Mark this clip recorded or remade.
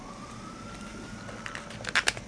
recorded